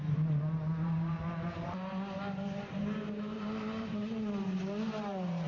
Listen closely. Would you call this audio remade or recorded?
remade